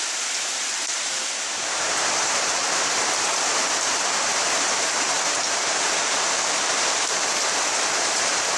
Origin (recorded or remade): remade